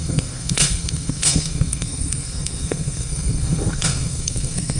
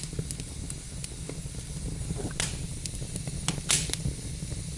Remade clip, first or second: first